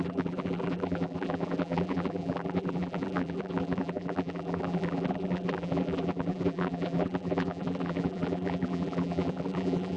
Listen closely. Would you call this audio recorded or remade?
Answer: remade